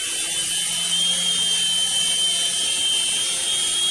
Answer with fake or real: real